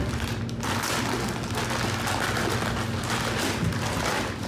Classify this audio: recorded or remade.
recorded